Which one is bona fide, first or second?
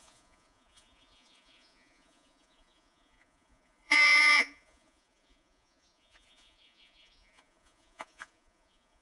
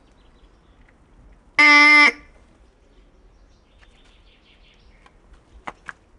second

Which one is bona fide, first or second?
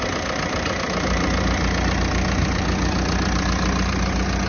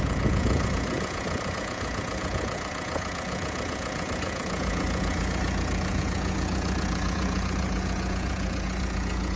first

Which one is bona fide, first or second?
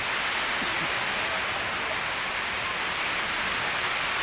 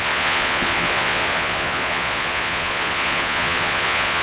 first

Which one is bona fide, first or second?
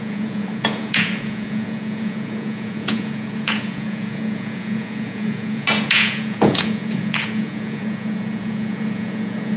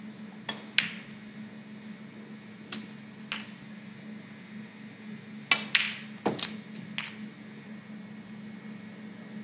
second